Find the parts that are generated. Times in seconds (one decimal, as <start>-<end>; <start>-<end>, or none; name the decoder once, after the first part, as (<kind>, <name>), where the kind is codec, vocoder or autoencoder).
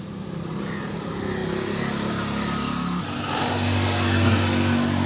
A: none